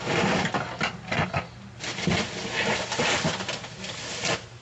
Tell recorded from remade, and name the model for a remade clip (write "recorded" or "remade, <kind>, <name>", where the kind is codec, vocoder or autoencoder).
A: recorded